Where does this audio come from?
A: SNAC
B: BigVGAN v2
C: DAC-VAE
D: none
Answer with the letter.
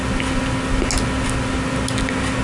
D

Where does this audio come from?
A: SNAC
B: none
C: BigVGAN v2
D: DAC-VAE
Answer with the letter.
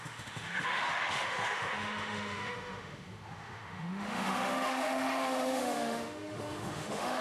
D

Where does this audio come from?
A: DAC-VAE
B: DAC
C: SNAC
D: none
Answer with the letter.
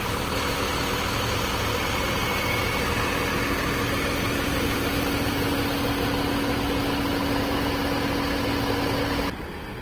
D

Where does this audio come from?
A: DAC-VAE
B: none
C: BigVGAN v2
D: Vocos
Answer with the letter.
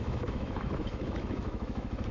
A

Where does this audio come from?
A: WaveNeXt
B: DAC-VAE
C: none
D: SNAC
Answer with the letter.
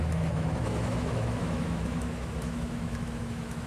B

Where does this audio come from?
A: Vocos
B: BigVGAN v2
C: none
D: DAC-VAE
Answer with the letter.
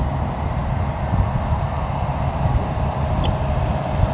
C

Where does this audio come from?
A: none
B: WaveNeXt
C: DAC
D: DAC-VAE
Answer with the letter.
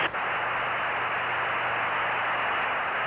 A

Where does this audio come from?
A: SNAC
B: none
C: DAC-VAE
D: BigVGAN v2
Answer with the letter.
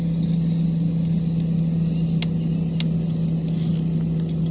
B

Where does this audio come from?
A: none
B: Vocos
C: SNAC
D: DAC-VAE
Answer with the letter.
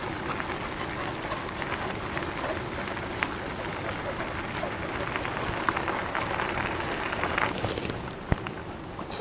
A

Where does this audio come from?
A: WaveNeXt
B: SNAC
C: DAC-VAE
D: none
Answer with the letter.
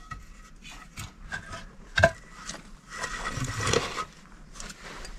D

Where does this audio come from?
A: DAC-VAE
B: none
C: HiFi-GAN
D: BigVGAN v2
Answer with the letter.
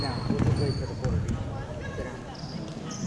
B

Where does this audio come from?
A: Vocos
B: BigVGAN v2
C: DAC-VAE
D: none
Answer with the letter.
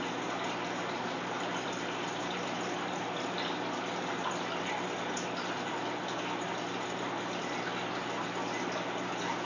D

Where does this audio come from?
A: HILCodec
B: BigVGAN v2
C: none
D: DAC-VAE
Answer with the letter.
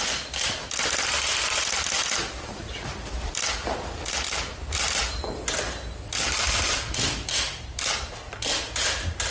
C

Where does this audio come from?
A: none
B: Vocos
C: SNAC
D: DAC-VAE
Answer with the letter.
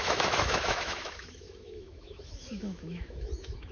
D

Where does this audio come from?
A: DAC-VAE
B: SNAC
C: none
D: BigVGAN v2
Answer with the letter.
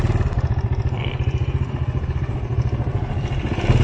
C